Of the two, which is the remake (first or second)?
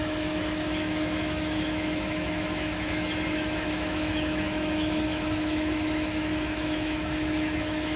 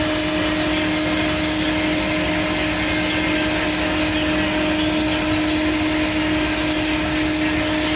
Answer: first